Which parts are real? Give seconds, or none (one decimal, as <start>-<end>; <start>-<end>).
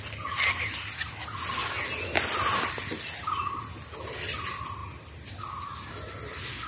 0.0-6.7